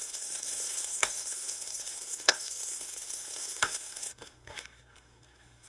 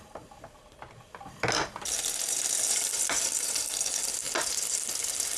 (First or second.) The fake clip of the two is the first